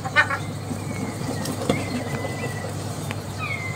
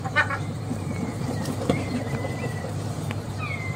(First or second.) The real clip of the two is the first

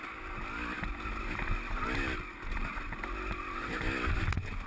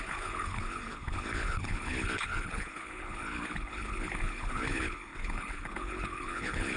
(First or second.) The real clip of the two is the first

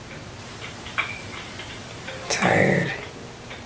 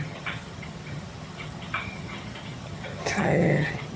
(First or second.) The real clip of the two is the first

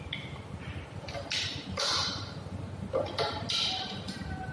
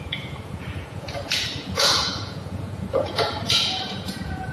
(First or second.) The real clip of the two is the first